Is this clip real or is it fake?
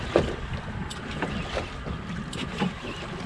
real